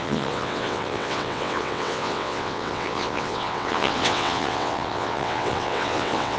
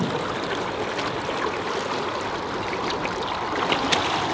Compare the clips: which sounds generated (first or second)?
first